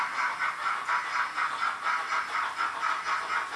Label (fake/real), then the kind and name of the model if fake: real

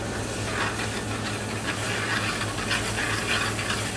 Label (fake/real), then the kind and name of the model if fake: real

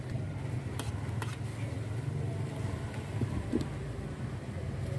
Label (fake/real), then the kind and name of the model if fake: real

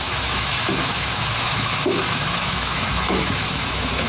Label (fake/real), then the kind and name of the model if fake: fake, autoencoder, DAC-VAE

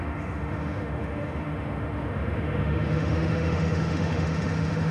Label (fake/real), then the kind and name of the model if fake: fake, autoencoder, DAC-VAE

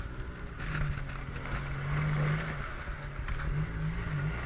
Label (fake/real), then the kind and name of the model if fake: real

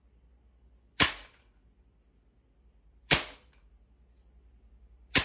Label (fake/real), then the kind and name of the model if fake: real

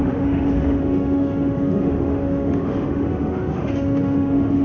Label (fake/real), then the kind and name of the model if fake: fake, autoencoder, DAC-VAE